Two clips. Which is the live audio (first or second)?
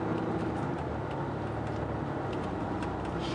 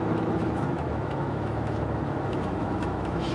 first